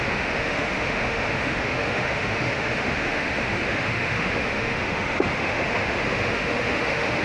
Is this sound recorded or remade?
remade